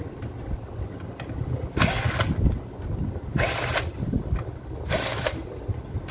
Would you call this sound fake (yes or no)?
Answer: no